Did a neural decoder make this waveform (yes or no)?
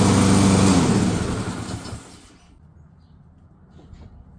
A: no